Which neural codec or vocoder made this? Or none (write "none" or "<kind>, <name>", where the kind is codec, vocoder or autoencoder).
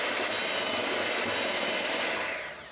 none